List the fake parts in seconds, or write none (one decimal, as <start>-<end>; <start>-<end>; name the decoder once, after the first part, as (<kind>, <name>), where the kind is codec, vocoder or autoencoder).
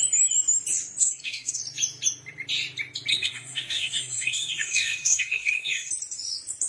1.0-1.6 (codec, SNAC); 3.1-5.9